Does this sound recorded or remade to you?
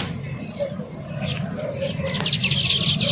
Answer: recorded